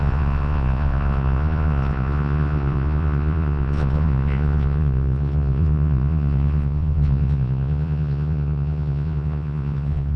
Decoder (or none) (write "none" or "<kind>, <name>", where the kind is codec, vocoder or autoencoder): vocoder, Vocos